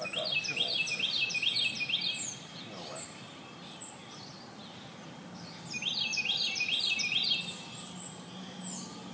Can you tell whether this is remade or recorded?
recorded